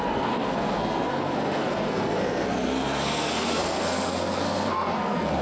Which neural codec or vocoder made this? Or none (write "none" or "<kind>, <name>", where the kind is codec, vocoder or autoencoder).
codec, SNAC